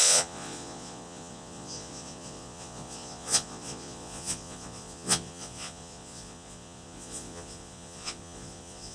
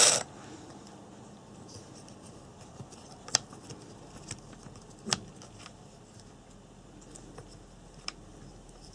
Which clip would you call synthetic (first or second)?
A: first